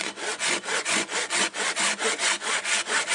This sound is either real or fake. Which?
fake